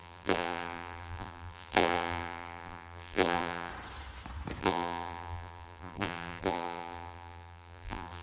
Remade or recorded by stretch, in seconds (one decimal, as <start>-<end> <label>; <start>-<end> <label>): 0.0-3.7 remade; 3.7-4.6 recorded; 4.6-8.2 remade